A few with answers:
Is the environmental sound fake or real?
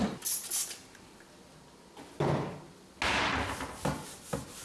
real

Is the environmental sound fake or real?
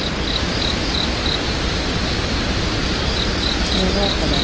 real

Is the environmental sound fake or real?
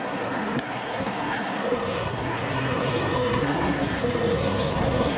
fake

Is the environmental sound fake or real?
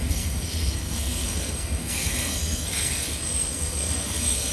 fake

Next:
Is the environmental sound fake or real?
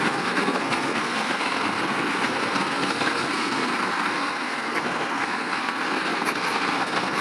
fake